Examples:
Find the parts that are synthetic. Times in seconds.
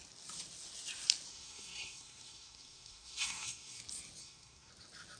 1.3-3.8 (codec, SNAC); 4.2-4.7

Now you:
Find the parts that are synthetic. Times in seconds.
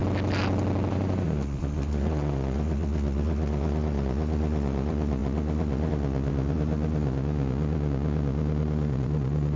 0.9-9.6 (vocoder, Vocos)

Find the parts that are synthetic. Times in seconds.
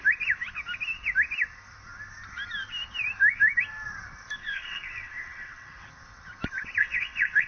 4.4-5.9 (vocoder, WaveNeXt); 6.8-7.5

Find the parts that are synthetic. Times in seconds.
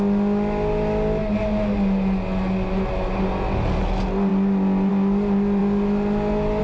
none